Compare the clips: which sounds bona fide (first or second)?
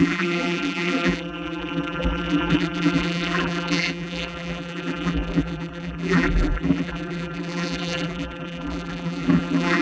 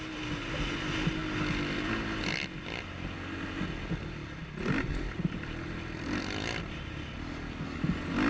second